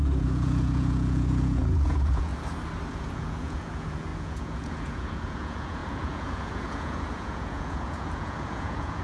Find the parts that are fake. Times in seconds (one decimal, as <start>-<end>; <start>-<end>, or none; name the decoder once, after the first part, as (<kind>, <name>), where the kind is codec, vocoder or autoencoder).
0.0-2.3 (vocoder, Vocos); 2.9-9.0